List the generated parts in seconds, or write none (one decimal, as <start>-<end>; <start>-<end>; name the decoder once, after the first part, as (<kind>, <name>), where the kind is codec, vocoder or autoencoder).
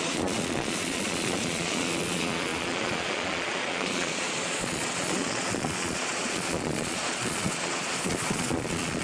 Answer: 0.0-9.0 (vocoder, Vocos)